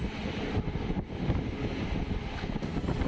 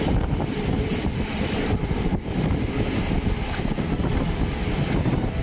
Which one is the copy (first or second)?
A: second